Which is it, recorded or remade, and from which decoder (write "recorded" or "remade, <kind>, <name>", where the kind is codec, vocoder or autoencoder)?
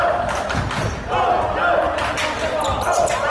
recorded